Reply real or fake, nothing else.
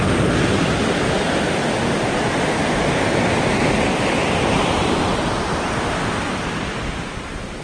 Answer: real